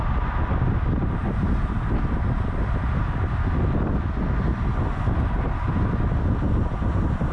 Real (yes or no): yes